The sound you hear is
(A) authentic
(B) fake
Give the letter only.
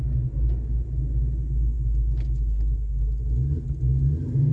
A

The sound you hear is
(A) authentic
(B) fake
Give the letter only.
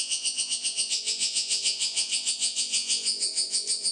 B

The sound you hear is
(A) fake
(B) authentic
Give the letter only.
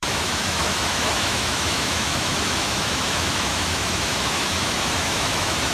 A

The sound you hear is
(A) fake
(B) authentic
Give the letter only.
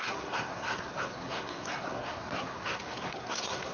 A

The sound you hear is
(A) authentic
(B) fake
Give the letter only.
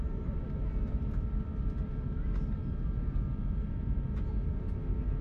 A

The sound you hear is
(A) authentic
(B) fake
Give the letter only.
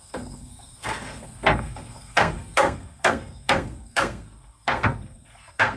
B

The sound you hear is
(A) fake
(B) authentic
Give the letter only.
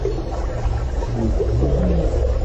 B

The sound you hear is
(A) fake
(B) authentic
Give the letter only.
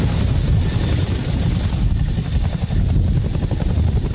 B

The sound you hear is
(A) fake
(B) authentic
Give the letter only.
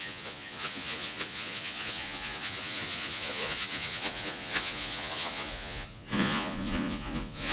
A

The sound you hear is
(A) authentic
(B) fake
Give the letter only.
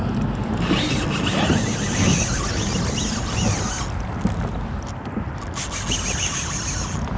A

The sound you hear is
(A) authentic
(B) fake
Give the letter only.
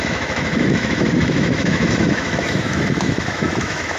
B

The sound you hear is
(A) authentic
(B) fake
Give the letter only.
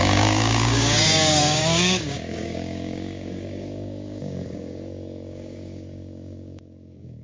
B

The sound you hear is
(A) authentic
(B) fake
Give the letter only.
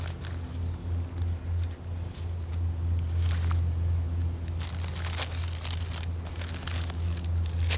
A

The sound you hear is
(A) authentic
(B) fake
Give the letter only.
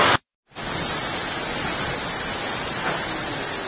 A